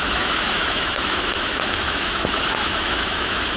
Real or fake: fake